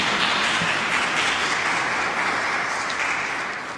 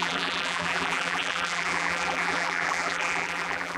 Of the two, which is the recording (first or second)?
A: first